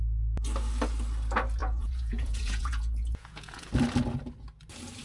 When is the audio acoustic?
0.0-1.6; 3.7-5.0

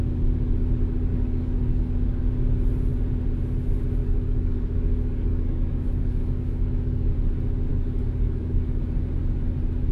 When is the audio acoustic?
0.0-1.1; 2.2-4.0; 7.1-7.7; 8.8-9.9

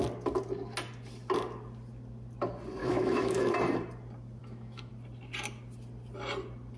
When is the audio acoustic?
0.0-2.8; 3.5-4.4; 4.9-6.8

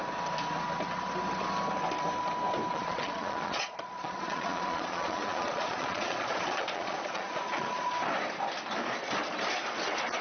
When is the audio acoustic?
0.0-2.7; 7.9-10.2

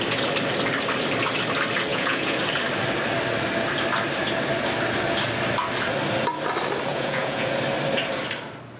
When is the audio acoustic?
0.0-1.9; 2.4-6.9; 7.5-8.8

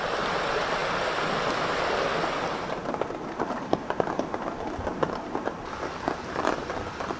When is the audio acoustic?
0.0-7.2